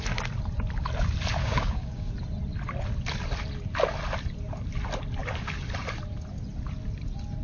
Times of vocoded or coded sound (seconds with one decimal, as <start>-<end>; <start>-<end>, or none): 1.4-2.1